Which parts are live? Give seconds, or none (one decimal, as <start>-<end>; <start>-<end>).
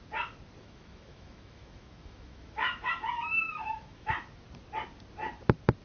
0.0-0.6; 4.1-5.8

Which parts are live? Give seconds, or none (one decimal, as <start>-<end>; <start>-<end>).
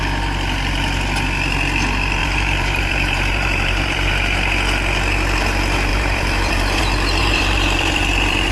0.0-2.2; 4.1-5.9; 6.8-7.2